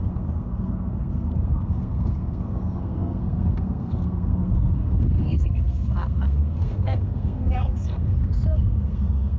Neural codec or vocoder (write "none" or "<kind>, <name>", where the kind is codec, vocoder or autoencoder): codec, SNAC